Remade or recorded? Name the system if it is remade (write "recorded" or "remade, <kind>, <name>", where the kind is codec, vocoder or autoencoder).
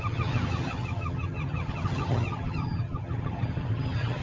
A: remade, vocoder, HiFi-GAN